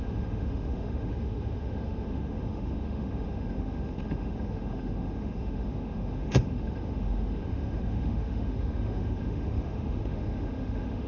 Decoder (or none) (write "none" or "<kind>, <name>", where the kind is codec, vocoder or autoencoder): autoencoder, DAC-VAE